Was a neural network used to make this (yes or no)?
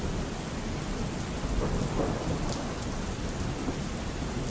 no